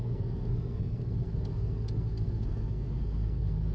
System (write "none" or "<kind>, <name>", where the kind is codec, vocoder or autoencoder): codec, SNAC